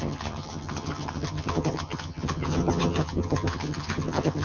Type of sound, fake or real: fake